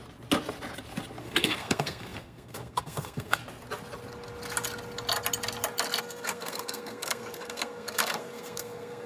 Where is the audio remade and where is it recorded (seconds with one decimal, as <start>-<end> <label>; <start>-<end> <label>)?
0.0-1.2 recorded; 1.2-3.4 remade; 3.4-6.0 recorded; 6.0-9.1 remade